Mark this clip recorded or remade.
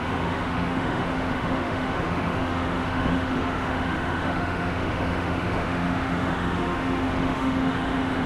remade